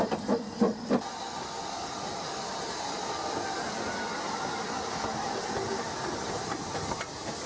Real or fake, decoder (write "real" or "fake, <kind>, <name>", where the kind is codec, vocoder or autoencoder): real